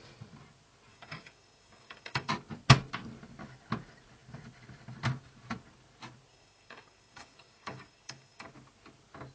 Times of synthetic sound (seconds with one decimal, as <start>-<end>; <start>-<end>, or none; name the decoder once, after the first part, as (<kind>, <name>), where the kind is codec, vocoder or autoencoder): 0.9-2.3 (codec, DAC); 6.3-8.5